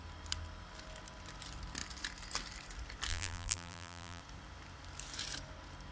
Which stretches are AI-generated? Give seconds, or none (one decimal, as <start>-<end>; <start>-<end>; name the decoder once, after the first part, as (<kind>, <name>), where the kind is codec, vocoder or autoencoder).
3.1-4.2 (vocoder, BigVGAN v2)